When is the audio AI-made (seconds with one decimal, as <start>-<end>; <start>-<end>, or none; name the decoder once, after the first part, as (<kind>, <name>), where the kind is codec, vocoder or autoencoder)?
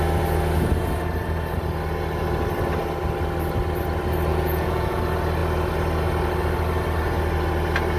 4.3-5.0 (vocoder, Vocos)